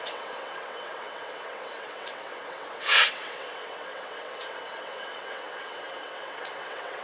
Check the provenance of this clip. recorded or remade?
remade